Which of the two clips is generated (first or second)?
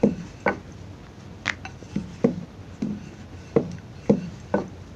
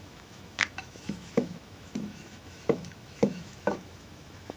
second